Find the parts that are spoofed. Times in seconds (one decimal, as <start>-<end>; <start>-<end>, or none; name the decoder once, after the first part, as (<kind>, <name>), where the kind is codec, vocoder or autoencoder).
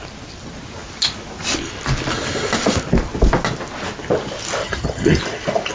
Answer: 4.6-5.2 (vocoder, HiFi-GAN)